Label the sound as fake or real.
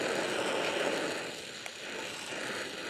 real